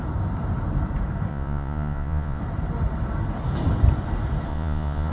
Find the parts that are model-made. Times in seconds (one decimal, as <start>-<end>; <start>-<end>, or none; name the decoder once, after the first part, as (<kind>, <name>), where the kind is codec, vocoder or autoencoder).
1.3-2.4 (vocoder, Vocos); 4.5-5.1